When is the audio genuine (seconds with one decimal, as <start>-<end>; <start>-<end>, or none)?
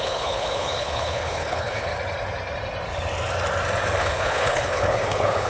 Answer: 1.9-4.0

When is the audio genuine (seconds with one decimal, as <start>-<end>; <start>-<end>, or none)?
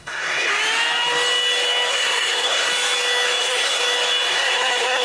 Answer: 0.5-1.9; 2.7-3.4; 3.8-4.3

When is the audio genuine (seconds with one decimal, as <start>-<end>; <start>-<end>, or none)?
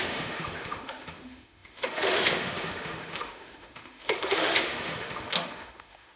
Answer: none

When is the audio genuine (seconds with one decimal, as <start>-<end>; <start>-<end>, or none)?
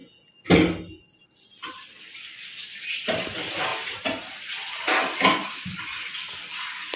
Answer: 0.0-7.0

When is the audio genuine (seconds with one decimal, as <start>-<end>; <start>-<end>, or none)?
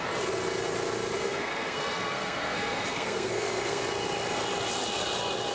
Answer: 0.0-1.2; 3.8-5.5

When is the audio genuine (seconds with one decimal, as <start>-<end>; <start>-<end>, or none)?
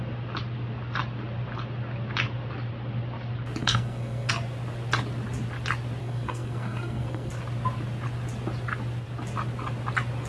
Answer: 0.0-3.6; 4.3-6.0; 7.3-10.3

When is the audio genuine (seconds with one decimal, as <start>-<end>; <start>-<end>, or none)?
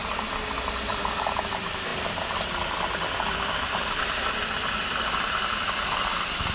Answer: 0.0-0.9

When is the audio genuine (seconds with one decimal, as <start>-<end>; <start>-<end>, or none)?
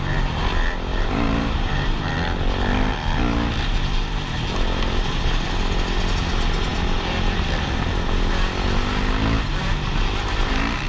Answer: 0.0-0.9; 2.0-10.9